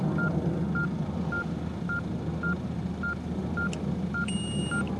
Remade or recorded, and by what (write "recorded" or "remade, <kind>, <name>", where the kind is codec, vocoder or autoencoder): recorded